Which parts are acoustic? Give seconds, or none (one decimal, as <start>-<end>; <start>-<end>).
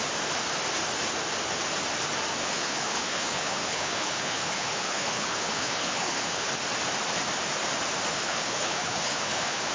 0.0-2.4; 6.5-8.1